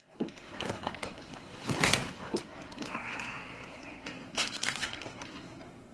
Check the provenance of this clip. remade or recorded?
remade